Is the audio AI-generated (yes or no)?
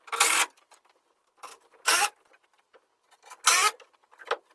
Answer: no